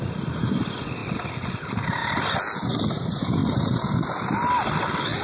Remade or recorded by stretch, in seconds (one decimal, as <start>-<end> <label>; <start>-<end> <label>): 0.0-1.0 remade; 1.0-1.6 recorded; 1.6-2.0 remade; 2.0-2.9 recorded; 2.9-3.4 remade; 3.4-5.2 recorded